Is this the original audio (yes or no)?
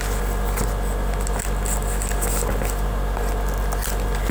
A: yes